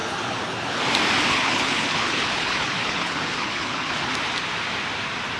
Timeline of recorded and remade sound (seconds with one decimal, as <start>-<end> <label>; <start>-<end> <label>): 0.0-0.8 remade; 0.8-1.3 recorded; 1.3-4.1 remade; 4.1-5.4 recorded